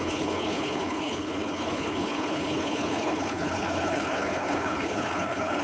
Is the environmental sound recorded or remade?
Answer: remade